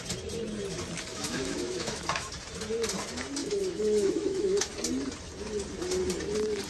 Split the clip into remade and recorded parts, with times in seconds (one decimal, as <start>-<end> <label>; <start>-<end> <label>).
0.0-1.1 recorded; 1.1-2.3 remade; 2.3-3.4 recorded; 3.4-4.7 remade; 4.7-6.7 recorded